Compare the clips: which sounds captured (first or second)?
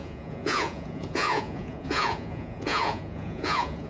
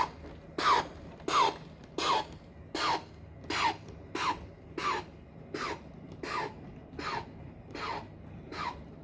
second